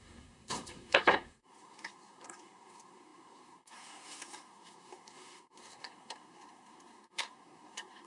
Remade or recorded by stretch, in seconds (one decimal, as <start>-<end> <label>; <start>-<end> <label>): 0.0-8.1 remade